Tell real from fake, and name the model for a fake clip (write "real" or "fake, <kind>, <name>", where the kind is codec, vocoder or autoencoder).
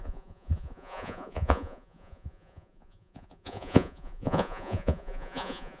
fake, vocoder, Vocos